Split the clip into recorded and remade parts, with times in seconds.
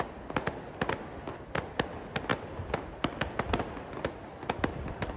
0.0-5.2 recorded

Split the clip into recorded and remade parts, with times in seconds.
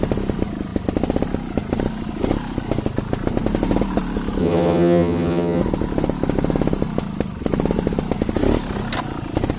0.0-4.4 recorded; 4.4-5.6 remade; 5.6-9.6 recorded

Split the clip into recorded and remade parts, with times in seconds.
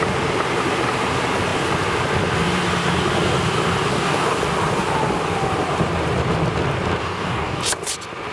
0.0-3.9 recorded; 3.9-4.4 remade; 4.4-7.0 recorded; 7.0-7.6 remade; 7.6-8.3 recorded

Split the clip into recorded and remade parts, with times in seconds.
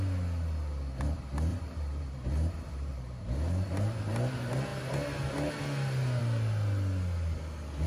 0.0-1.5 recorded; 1.5-3.2 remade; 3.2-7.9 recorded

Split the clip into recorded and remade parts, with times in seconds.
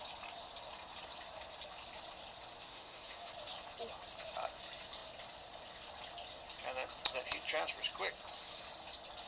0.0-2.7 recorded; 2.7-3.3 remade; 3.3-9.3 recorded